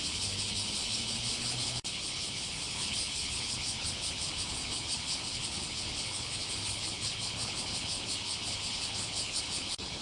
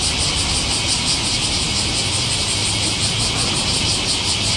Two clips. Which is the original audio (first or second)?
second